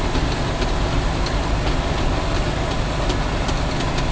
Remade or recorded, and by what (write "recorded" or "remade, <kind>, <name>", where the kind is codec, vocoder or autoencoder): recorded